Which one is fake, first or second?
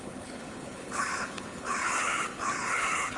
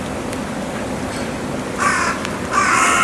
first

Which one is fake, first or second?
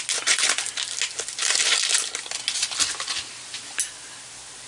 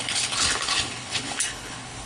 second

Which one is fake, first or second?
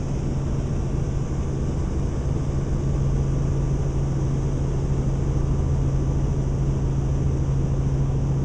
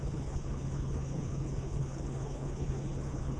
second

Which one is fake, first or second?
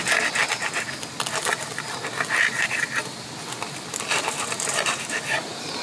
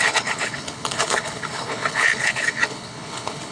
second